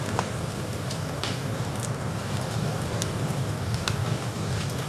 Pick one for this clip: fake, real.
fake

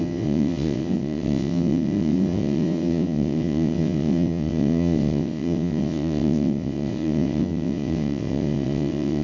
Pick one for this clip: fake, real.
fake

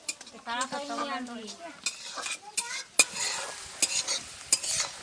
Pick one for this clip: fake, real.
real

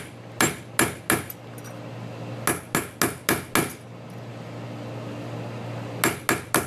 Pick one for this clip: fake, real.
real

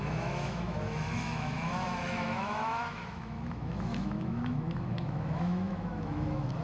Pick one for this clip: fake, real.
fake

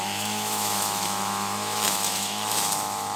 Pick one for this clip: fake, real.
fake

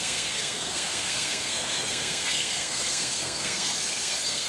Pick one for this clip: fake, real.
fake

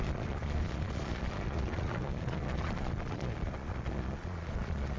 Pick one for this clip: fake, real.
fake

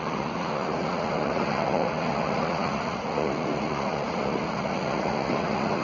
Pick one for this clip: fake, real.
fake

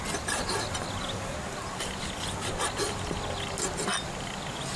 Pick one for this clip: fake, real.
real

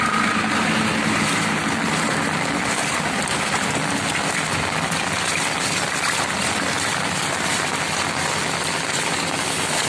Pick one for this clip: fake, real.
real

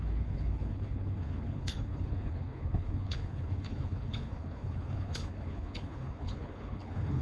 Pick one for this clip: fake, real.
fake